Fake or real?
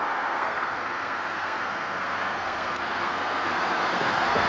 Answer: fake